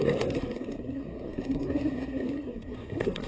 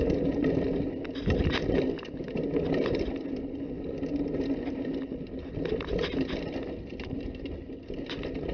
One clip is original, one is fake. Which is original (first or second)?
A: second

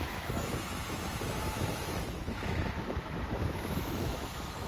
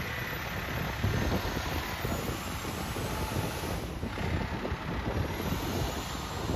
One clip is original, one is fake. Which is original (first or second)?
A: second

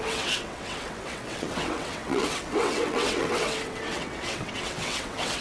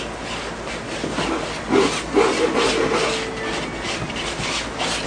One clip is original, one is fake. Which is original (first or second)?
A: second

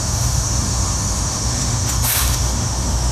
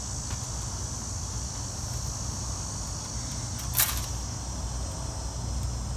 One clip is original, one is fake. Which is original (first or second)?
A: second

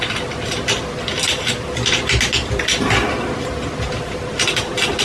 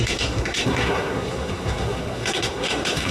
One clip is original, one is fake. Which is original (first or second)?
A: first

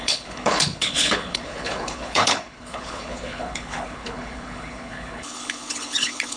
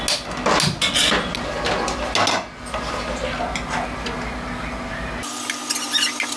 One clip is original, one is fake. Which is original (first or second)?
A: second